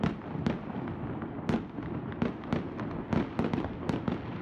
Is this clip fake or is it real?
real